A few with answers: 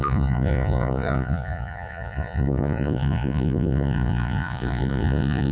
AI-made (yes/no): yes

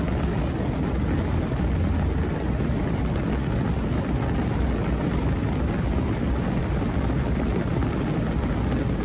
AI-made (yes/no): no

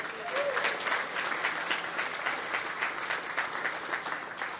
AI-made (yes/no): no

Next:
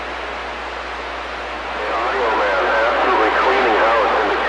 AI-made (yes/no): no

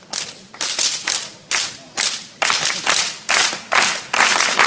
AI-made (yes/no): no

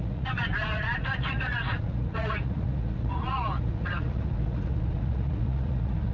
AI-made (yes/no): yes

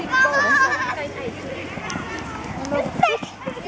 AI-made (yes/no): no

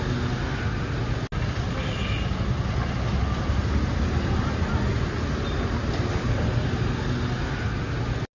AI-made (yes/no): no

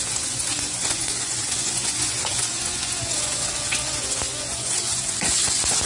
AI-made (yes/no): yes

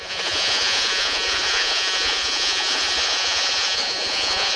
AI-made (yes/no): yes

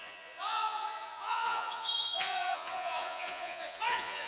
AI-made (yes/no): yes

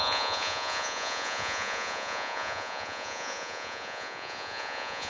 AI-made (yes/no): yes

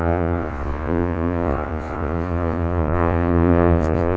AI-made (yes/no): yes